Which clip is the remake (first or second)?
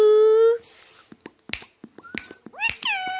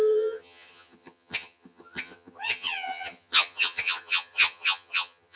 second